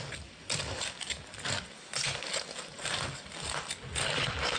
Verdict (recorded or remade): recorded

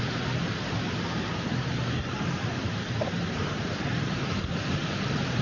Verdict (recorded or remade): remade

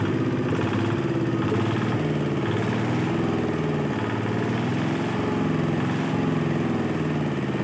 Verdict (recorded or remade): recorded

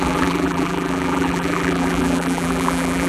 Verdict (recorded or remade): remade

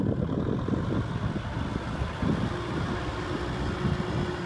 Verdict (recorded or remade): recorded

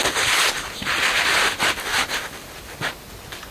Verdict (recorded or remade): recorded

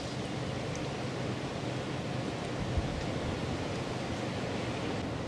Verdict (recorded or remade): recorded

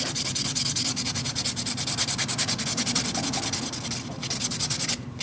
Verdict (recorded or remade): recorded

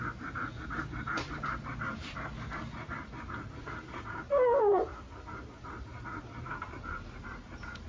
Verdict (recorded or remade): recorded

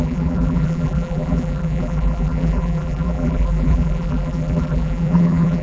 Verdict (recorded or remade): remade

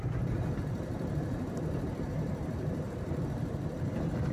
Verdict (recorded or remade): remade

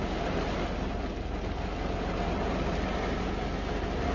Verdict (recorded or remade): recorded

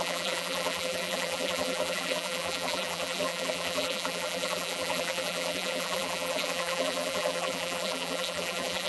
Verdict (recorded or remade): remade